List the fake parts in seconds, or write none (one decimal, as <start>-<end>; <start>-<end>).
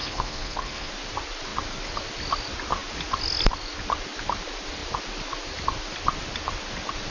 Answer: 0.0-0.9